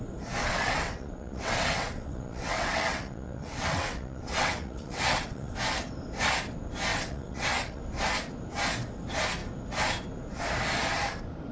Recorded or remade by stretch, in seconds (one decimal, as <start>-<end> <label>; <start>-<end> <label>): 0.0-0.4 recorded; 0.4-5.6 remade; 5.6-6.9 recorded; 6.9-7.8 remade; 7.8-11.5 recorded